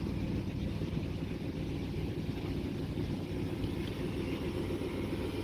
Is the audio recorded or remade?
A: recorded